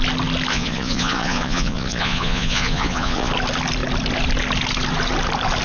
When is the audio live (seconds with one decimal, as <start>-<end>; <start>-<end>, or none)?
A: 0.0-0.5; 3.3-5.6